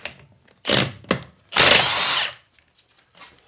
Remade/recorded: recorded